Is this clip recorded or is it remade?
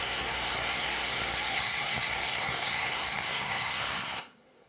remade